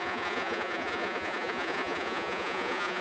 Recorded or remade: remade